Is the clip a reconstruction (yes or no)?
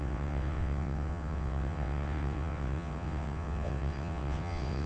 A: yes